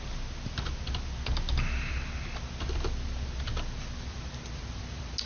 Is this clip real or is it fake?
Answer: real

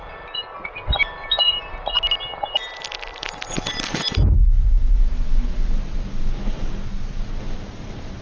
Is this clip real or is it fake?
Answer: real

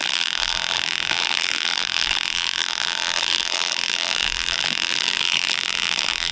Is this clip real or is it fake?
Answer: fake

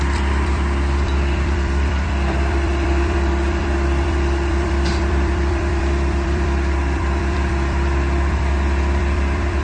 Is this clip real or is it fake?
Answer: fake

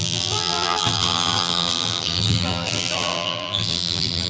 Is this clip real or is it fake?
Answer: fake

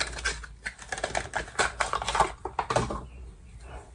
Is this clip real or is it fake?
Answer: real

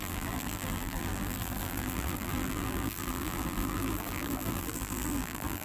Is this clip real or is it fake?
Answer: fake